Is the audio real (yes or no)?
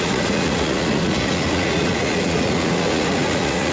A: no